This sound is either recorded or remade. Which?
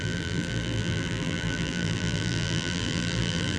remade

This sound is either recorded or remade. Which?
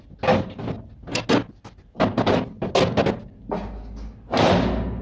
recorded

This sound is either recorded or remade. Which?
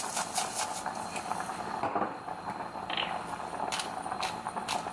recorded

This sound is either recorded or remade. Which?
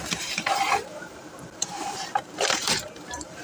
remade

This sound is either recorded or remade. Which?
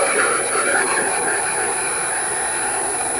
recorded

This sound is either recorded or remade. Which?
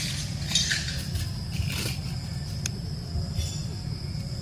recorded